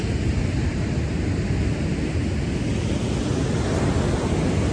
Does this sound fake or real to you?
real